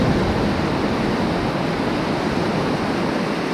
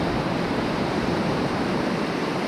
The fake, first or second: second